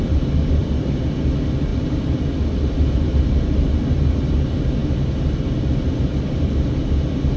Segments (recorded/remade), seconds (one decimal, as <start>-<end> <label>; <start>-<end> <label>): 0.0-0.6 recorded; 0.6-1.2 remade; 1.2-1.7 recorded; 1.7-2.7 remade; 2.7-7.4 recorded